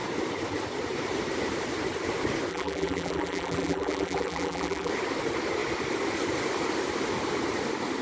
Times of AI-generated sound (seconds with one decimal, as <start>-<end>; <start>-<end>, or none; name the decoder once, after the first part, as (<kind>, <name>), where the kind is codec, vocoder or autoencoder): 2.5-4.9 (vocoder, BigVGAN v2)